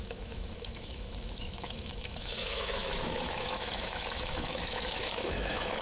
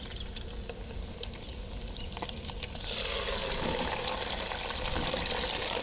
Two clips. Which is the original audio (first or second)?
second